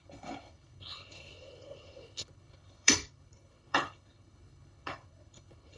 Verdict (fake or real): fake